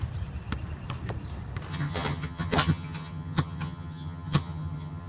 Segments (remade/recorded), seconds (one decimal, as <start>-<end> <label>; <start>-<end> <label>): 0.0-1.7 recorded; 1.7-5.1 remade